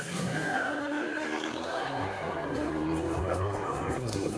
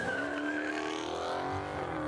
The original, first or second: second